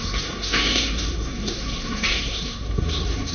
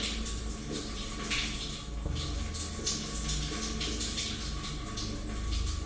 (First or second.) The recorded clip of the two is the second